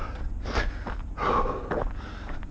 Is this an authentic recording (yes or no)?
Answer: yes